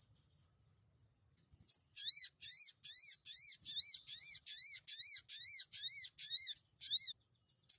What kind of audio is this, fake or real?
real